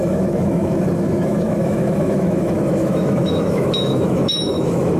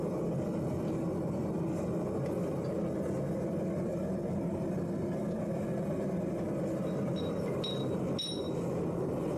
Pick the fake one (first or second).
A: first